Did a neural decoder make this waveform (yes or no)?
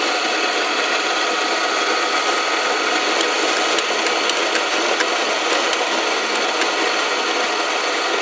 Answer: no